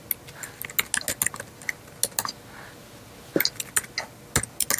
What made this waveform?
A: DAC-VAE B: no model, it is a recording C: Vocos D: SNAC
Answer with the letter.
B